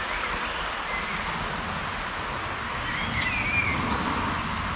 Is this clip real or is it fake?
real